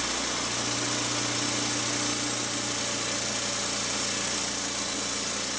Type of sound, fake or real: real